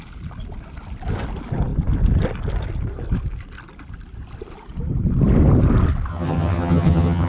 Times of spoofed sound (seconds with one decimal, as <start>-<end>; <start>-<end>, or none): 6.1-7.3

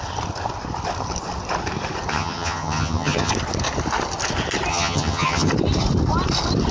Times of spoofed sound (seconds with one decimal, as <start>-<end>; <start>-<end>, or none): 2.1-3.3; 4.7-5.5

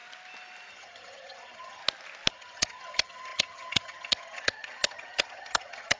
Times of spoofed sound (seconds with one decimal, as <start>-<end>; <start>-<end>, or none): 0.7-1.8; 2.3-6.0